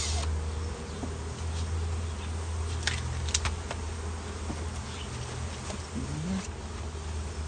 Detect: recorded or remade recorded